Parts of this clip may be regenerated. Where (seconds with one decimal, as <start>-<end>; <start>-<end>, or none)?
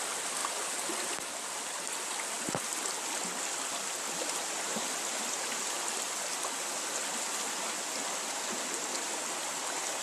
none